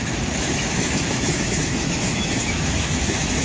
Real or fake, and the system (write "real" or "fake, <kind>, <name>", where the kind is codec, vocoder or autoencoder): fake, autoencoder, DAC-VAE